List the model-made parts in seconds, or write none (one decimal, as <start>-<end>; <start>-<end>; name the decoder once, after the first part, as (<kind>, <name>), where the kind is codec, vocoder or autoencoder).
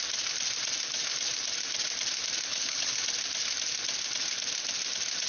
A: 2.5-3.0 (codec, HILCodec)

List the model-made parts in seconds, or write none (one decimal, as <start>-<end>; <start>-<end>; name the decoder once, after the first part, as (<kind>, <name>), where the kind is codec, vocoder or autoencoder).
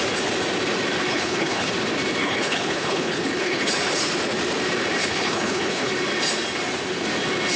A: 1.1-1.7 (codec, HILCodec); 2.2-3.7; 5.0-5.9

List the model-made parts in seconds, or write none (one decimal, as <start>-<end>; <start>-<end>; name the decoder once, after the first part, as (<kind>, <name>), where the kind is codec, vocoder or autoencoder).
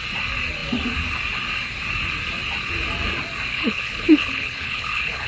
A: 3.5-5.3 (codec, HILCodec)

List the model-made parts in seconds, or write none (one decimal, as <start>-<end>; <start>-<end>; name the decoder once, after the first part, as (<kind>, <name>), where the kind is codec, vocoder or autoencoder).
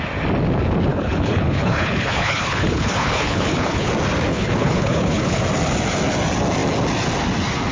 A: 0.9-3.9 (codec, HILCodec); 4.3-5.4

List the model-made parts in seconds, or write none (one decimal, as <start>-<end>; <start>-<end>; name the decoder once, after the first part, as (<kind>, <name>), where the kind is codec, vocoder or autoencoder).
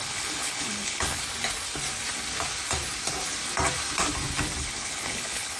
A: 0.0-1.2 (codec, HILCodec); 4.6-5.6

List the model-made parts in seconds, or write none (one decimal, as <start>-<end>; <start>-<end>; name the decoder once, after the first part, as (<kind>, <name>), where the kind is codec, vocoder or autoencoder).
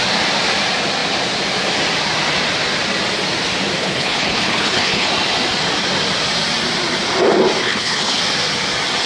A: 3.8-5.1 (codec, HILCodec); 7.6-8.2